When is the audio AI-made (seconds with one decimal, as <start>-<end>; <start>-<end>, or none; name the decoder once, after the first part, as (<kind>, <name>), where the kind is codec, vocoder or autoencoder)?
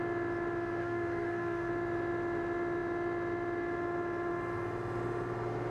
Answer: 0.8-1.7 (codec, SNAC)